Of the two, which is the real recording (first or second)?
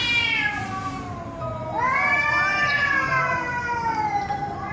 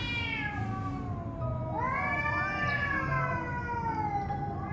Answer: second